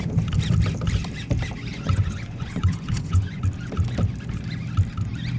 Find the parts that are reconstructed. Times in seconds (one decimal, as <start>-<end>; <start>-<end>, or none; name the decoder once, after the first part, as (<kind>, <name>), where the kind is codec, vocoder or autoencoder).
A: 1.7-3.4 (vocoder, Vocos)